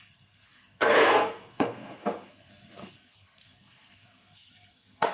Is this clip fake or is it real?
fake